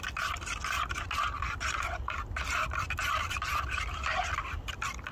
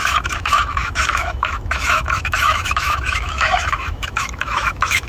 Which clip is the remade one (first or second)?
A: second